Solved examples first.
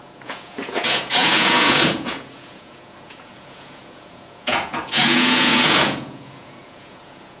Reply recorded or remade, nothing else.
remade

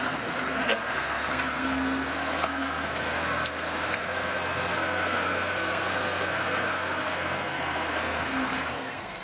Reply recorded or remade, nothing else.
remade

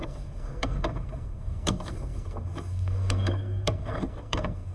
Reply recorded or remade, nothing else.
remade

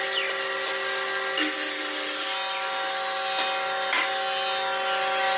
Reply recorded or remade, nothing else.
recorded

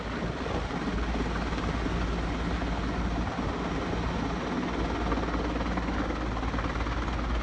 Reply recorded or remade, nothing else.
recorded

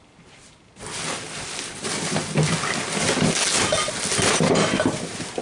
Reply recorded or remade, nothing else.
recorded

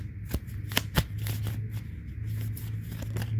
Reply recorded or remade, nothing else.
recorded